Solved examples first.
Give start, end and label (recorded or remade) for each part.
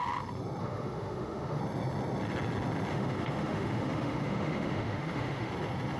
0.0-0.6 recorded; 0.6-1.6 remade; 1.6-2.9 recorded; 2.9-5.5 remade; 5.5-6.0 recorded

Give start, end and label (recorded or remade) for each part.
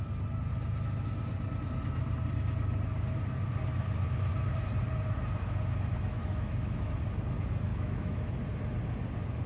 0.0-6.2 recorded; 6.2-6.9 remade; 6.9-7.7 recorded; 7.7-8.4 remade; 8.4-9.5 recorded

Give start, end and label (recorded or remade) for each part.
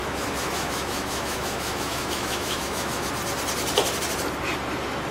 0.0-3.1 remade; 3.1-5.1 recorded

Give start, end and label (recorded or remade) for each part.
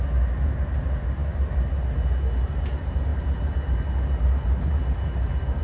0.0-5.6 recorded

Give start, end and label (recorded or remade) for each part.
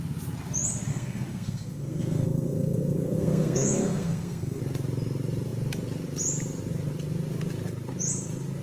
0.0-0.9 recorded; 0.9-4.6 remade; 4.6-8.6 recorded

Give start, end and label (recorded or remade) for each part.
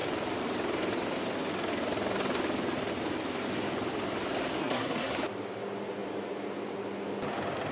0.0-4.6 recorded; 4.6-5.2 remade; 5.2-7.7 recorded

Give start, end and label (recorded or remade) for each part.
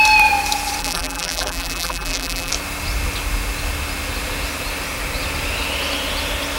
0.0-0.8 recorded; 0.8-2.5 remade; 2.5-6.6 recorded